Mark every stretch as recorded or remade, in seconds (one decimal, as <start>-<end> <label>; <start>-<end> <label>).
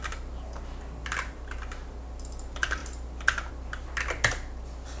0.0-5.0 recorded